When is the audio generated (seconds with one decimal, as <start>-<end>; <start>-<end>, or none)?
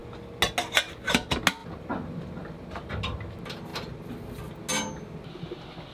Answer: none